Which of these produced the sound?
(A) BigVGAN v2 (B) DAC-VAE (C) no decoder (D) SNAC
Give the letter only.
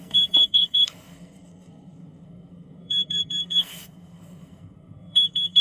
D